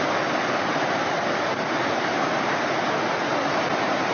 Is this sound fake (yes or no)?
no